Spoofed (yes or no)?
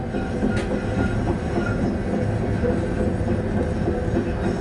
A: no